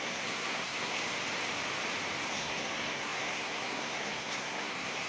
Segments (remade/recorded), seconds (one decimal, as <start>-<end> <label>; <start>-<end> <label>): 0.0-1.0 remade; 1.0-2.3 recorded; 2.3-5.1 remade

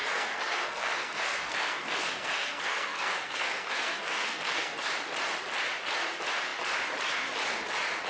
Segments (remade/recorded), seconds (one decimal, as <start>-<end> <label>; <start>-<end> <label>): 0.0-4.9 remade; 4.9-8.1 recorded

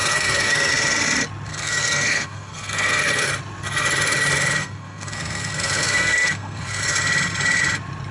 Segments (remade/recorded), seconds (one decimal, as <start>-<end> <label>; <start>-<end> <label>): 0.0-0.7 remade; 0.7-1.5 recorded; 1.5-3.3 remade; 3.3-4.6 recorded; 4.6-6.8 remade; 6.8-8.1 recorded

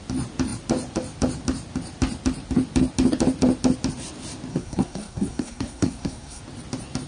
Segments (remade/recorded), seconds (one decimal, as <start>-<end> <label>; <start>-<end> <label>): 0.0-4.5 recorded; 4.5-6.4 remade; 6.4-7.1 recorded

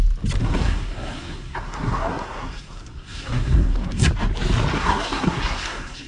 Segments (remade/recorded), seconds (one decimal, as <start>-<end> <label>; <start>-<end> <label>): 0.0-0.4 recorded; 0.4-4.1 remade; 4.1-4.7 recorded; 4.7-6.1 remade

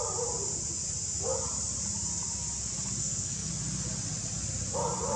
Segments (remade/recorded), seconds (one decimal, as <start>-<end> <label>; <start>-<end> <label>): 0.0-3.0 recorded; 3.0-3.5 remade; 3.5-5.2 recorded

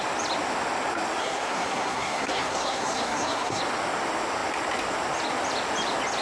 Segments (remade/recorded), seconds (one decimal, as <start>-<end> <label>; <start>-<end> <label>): 0.0-1.2 recorded; 1.2-3.6 remade; 3.6-6.2 recorded